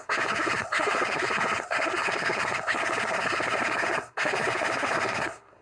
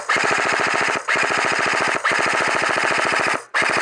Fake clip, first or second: first